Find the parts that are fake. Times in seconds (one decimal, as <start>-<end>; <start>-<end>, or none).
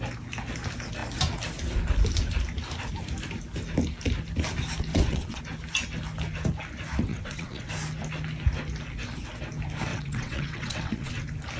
4.9-5.4; 7.1-7.7; 9.9-11.1